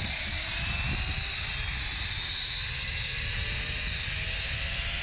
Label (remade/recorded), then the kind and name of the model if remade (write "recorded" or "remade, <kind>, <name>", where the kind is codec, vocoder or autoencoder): recorded